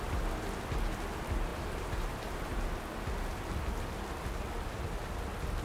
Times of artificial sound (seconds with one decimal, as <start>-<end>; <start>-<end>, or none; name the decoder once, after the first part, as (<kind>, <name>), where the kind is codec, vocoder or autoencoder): 1.5-2.8 (vocoder, BigVGAN v2)